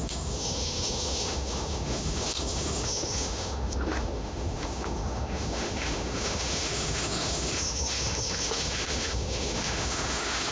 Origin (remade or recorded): remade